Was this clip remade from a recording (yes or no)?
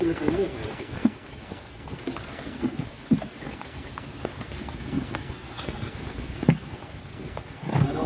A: yes